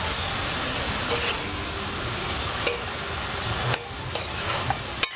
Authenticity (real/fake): real